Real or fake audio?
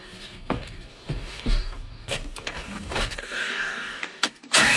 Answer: fake